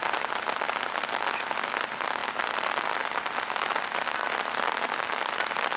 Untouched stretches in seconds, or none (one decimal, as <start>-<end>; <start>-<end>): 0.0-5.8